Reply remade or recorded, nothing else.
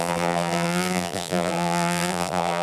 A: remade